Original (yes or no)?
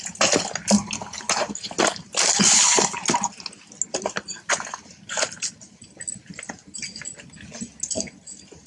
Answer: yes